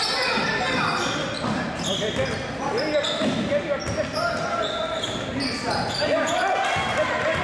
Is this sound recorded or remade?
recorded